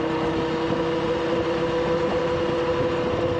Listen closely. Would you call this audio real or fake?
real